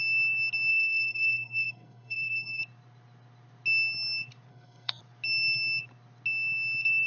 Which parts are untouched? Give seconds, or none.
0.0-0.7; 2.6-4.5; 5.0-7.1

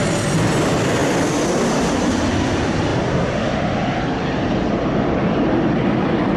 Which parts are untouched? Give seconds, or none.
0.0-6.4